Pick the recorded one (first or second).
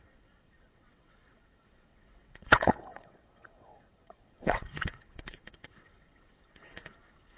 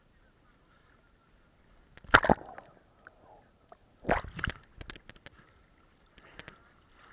second